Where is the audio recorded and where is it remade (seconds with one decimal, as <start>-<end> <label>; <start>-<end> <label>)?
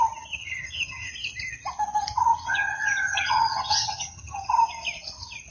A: 0.0-0.4 recorded; 0.4-1.1 remade; 1.1-2.3 recorded; 2.3-4.5 remade; 4.5-5.5 recorded